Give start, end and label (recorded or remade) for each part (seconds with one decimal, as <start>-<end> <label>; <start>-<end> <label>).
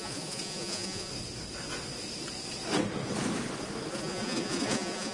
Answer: 0.0-1.1 remade; 1.1-3.9 recorded; 3.9-5.1 remade